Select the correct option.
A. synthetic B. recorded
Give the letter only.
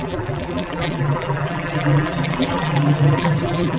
A